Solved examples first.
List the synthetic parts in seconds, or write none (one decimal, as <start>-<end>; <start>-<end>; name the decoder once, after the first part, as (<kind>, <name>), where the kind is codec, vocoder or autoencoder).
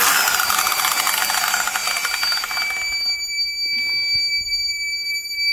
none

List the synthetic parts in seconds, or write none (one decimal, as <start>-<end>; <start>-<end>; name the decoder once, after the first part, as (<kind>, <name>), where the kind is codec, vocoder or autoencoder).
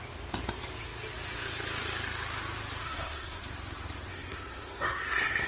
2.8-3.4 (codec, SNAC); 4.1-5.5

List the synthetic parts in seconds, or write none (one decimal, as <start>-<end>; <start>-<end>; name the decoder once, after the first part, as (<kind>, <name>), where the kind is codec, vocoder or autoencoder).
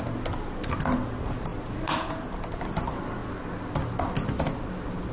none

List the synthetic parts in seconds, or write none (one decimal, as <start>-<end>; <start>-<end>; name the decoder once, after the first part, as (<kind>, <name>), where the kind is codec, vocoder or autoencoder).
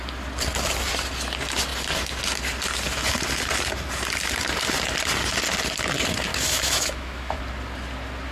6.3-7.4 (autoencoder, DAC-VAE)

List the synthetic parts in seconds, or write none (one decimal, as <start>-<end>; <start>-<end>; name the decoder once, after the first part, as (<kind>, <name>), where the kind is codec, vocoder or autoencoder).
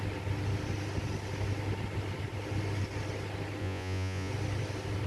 3.6-4.3 (vocoder, Vocos)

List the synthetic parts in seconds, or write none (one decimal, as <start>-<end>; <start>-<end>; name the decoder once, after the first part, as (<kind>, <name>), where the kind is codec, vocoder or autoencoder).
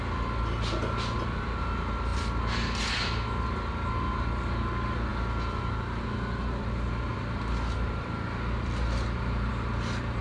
7.1-9.5 (vocoder, BigVGAN v2)